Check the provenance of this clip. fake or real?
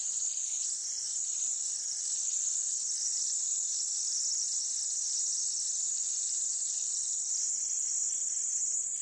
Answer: real